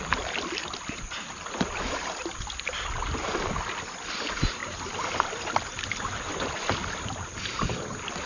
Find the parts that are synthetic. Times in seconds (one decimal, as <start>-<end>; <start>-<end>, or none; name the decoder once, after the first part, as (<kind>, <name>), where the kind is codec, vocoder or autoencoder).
none